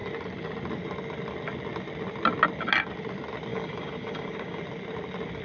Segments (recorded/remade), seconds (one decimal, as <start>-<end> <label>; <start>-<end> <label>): 0.0-3.5 recorded; 3.5-4.6 remade; 4.6-5.4 recorded